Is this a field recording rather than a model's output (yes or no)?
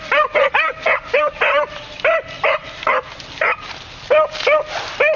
yes